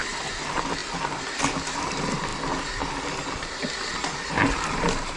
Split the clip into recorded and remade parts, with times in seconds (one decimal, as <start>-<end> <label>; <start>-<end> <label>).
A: 0.0-5.2 recorded